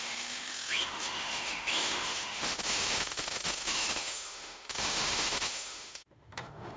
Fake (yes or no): yes